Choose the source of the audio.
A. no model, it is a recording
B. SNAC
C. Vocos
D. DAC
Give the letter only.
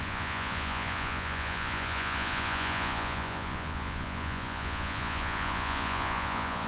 C